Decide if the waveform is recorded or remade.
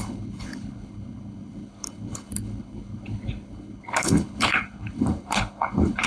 remade